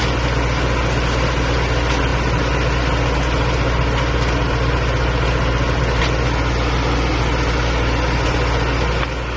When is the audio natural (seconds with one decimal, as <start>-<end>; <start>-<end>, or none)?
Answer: 0.0-9.4